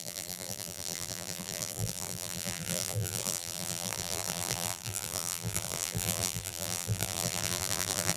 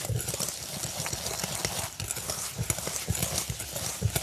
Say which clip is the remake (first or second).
first